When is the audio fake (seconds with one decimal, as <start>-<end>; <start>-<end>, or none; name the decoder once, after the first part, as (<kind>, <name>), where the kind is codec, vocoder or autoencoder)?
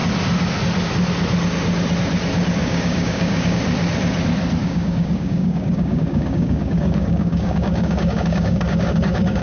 2.6-3.6 (codec, DAC); 4.6-9.4